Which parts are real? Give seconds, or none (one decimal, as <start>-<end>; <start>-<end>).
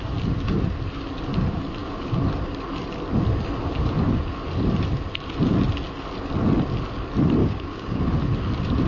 0.0-7.4; 8.0-8.9